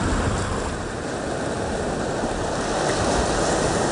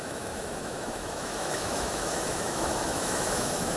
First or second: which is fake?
second